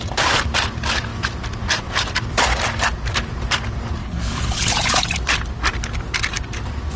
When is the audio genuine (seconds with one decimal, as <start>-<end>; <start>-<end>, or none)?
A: 0.0-4.0; 4.7-7.0